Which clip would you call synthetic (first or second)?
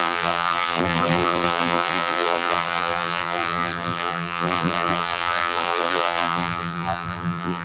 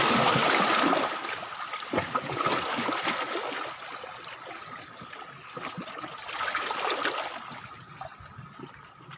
first